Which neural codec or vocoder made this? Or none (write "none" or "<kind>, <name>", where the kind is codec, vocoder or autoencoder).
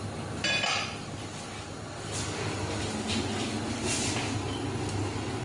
none